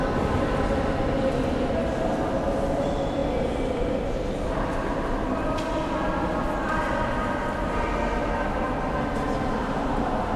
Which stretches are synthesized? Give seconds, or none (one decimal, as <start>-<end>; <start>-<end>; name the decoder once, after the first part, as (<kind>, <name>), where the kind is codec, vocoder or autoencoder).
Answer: none